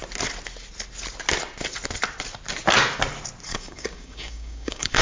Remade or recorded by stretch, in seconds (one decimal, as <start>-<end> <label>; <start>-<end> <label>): 0.0-3.5 recorded; 3.5-5.0 remade